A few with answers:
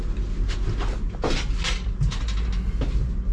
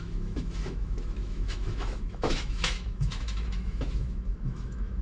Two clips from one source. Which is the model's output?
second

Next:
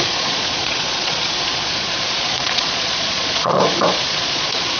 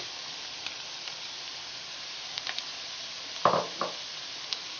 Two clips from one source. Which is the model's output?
first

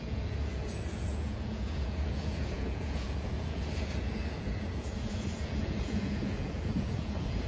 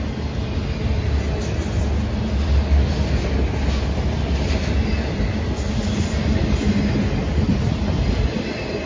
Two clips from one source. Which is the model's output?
first